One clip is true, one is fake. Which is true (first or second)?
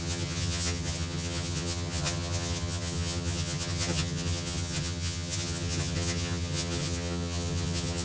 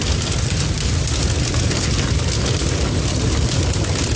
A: second